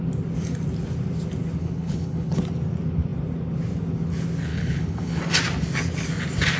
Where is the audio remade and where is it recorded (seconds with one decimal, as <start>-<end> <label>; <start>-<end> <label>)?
0.0-1.6 recorded; 1.6-2.4 remade; 2.4-4.5 recorded; 4.5-5.2 remade; 5.2-6.6 recorded